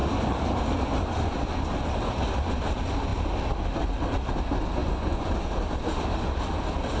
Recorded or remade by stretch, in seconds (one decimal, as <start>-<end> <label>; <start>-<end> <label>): 0.0-4.8 recorded; 4.8-5.3 remade; 5.3-7.0 recorded